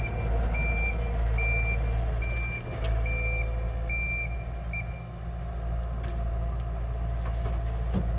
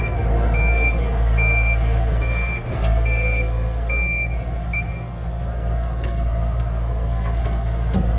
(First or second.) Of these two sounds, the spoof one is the second